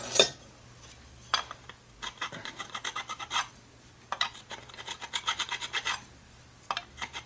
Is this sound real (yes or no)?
yes